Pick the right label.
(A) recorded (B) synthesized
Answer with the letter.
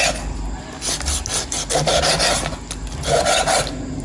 A